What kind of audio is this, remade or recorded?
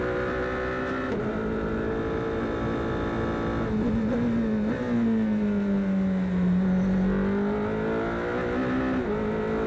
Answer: recorded